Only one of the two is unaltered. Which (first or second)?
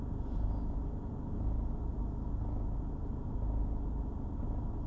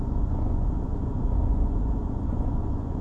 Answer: first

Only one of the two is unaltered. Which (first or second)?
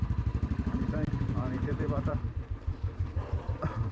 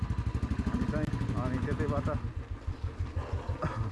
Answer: second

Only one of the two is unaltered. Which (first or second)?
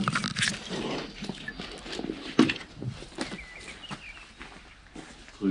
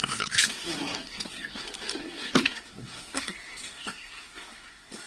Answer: first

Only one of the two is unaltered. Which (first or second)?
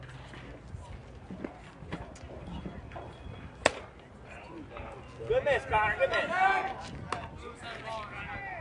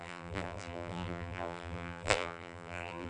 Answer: first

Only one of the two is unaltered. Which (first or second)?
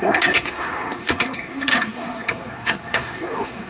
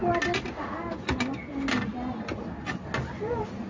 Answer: second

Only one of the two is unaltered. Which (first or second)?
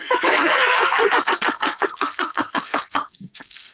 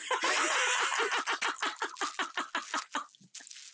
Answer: second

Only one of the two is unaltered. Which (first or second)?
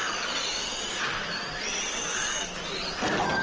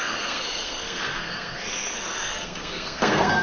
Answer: first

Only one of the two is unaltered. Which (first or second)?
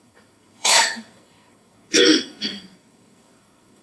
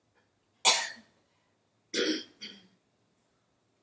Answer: second